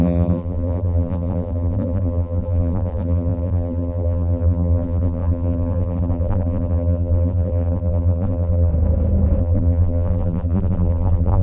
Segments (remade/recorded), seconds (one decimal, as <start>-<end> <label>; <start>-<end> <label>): 0.0-8.7 remade; 8.7-9.4 recorded; 9.4-11.4 remade